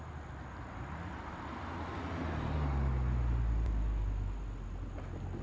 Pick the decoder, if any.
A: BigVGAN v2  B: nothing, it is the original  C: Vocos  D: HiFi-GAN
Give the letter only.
B